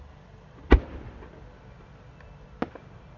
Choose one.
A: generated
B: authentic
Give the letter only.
B